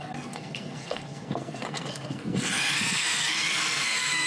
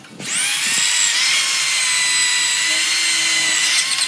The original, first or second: second